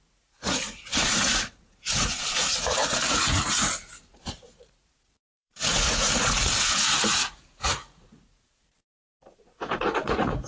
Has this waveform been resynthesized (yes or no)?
yes